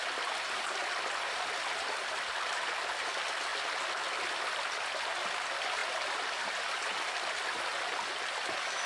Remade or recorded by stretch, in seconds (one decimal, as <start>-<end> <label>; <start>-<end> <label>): 0.0-8.9 recorded